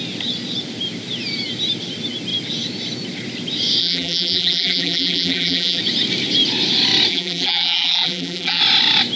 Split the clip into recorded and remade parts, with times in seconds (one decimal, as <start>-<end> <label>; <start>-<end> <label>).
0.0-3.8 recorded; 3.8-5.8 remade; 5.8-7.1 recorded; 7.1-8.6 remade; 8.6-9.2 recorded